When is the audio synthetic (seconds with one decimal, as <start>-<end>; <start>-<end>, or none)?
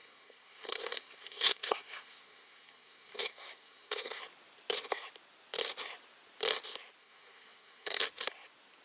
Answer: 0.0-4.2; 7.0-8.0